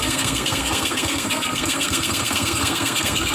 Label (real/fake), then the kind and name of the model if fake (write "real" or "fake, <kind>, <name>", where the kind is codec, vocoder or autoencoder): fake, codec, SNAC